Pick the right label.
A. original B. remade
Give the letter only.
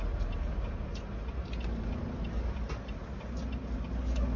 A